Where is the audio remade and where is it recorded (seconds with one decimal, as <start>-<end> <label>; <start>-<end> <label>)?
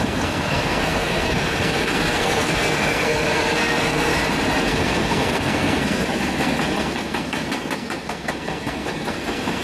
0.0-4.1 remade; 4.1-4.6 recorded; 4.6-9.6 remade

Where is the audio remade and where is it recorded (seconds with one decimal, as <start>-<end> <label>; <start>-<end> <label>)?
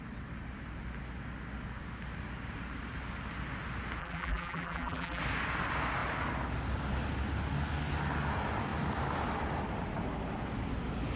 0.0-4.0 recorded; 4.0-5.2 remade; 5.2-11.2 recorded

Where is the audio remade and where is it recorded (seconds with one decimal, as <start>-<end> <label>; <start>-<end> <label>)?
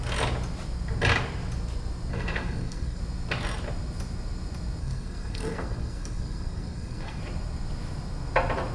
0.0-2.1 recorded; 2.1-3.0 remade; 3.0-4.8 recorded; 4.8-7.2 remade; 7.2-8.7 recorded